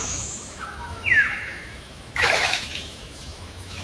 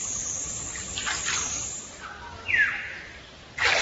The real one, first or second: second